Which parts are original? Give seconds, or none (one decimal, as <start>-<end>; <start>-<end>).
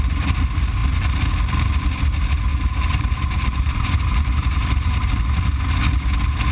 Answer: 0.0-0.8; 1.3-2.5; 5.1-6.5